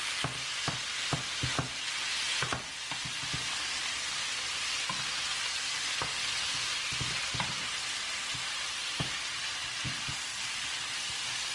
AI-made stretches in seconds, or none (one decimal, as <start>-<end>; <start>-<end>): none